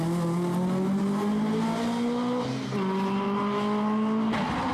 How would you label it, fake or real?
real